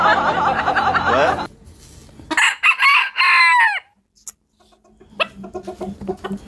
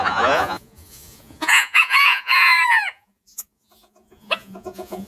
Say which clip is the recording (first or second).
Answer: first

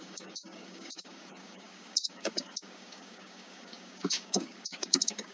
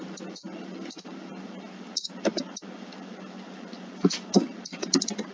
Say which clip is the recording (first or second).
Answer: second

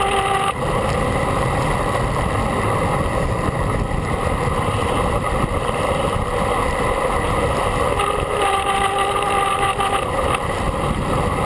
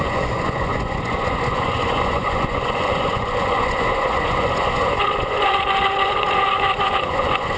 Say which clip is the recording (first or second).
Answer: first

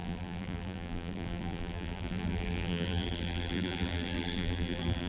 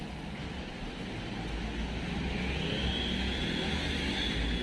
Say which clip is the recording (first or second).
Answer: second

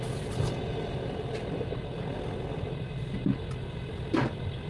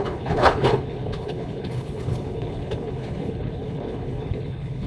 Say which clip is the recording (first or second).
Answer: first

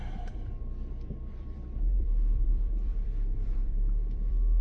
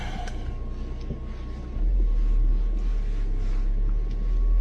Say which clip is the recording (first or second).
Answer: second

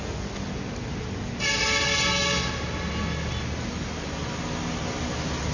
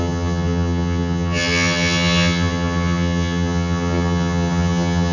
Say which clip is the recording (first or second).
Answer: first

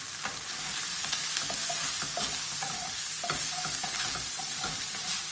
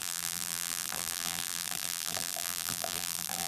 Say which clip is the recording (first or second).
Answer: first